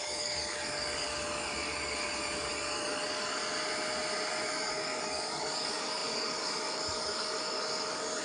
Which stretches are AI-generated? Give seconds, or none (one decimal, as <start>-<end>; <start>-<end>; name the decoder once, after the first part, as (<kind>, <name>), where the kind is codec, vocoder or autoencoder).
0.0-3.4 (codec, DAC); 4.3-8.2

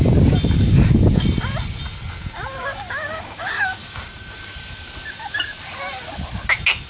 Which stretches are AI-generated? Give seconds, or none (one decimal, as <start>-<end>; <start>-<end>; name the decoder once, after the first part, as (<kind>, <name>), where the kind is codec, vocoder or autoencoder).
2.5-4.7 (codec, DAC)

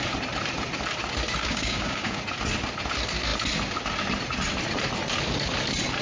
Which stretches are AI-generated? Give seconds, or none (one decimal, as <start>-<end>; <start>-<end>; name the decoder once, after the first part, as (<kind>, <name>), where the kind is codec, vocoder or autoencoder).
1.4-2.2 (codec, DAC)

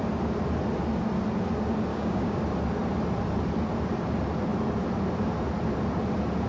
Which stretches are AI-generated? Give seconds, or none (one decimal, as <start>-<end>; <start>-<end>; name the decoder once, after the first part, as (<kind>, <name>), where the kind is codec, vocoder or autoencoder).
1.9-2.4 (codec, DAC)

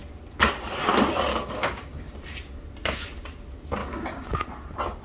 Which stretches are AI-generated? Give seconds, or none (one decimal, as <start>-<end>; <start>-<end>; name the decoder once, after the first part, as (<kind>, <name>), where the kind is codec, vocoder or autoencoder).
1.3-2.1 (codec, DAC); 3.8-4.3

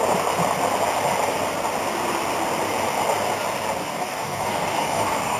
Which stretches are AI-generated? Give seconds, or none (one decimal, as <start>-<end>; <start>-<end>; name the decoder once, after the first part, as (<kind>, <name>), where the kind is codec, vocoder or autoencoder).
3.8-5.4 (codec, DAC)